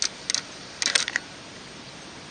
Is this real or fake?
real